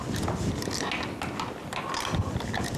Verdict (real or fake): real